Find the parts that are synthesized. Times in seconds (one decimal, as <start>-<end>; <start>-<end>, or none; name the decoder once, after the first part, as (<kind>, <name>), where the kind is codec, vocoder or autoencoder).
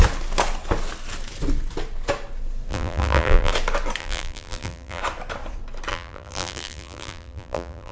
2.7-3.5 (vocoder, BigVGAN v2); 4.0-5.0; 5.9-7.9